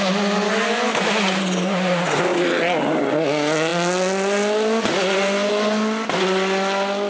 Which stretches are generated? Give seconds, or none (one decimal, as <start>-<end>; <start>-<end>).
none